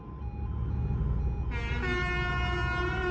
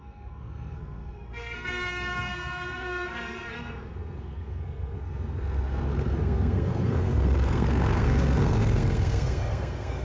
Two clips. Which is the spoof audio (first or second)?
second